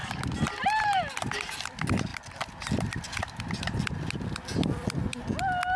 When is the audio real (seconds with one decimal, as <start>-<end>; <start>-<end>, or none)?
0.0-5.8